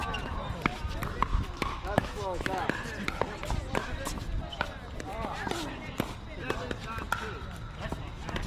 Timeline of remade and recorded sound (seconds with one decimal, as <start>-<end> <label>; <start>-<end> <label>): 0.0-1.3 recorded; 1.3-2.5 remade; 2.5-8.5 recorded